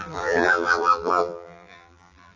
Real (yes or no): no